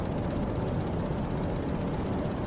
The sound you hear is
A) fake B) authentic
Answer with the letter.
B